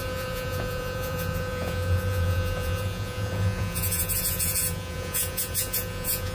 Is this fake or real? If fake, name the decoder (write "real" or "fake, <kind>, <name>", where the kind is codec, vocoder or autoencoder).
fake, vocoder, Vocos